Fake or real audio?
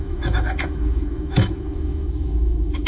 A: fake